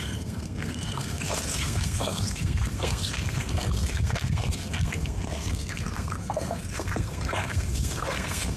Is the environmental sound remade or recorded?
remade